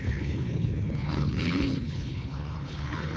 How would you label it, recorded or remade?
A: remade